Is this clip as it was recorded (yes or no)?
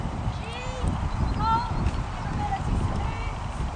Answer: yes